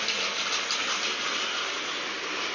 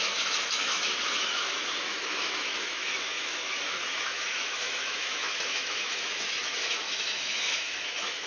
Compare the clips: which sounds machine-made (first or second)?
second